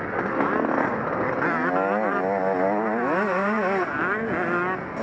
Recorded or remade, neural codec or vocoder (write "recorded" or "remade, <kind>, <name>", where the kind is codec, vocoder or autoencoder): recorded